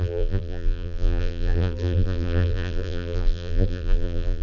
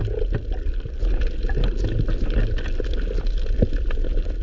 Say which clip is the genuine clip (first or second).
second